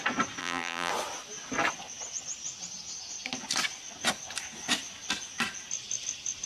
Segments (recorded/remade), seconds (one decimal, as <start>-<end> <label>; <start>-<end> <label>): 0.0-0.4 recorded; 0.4-0.9 remade; 0.9-6.5 recorded